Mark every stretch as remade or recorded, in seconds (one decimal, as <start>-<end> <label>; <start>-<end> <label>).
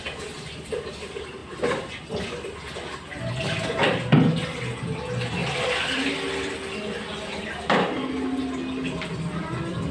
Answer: 0.0-9.9 recorded